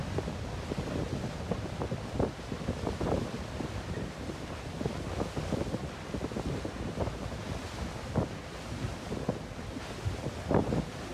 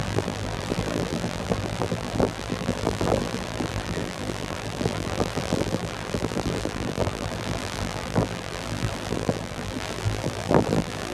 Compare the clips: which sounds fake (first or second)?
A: second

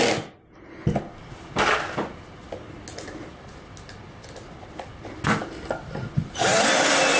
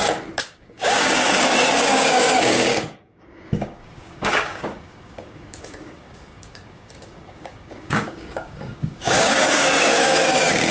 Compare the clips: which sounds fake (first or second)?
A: second